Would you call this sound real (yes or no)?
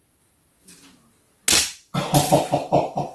yes